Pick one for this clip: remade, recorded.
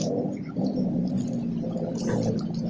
recorded